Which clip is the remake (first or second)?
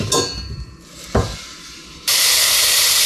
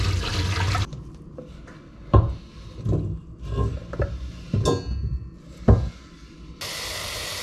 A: first